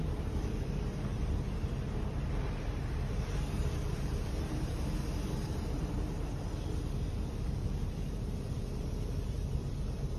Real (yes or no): no